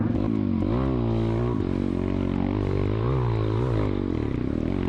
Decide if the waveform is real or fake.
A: real